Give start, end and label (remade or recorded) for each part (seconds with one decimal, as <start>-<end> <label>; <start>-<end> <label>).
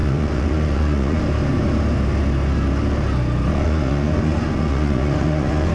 0.0-1.2 remade; 1.2-3.5 recorded; 3.5-5.7 remade